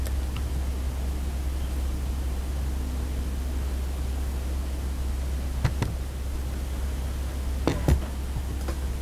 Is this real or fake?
real